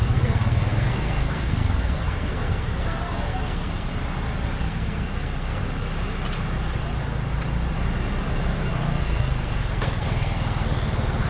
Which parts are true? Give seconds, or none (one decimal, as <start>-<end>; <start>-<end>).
3.9-4.6; 5.6-8.7